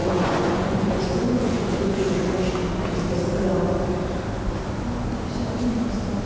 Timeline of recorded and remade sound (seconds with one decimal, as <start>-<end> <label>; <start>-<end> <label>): 0.0-2.4 remade; 2.4-6.3 recorded